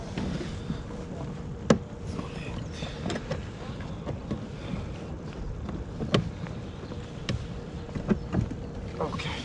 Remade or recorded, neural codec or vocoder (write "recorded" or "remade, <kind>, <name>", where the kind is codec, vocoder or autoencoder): recorded